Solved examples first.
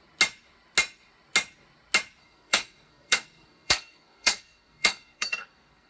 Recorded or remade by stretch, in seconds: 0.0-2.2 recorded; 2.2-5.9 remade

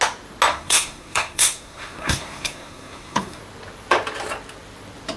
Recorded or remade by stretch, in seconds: 0.0-0.5 recorded; 0.5-3.4 remade; 3.4-5.2 recorded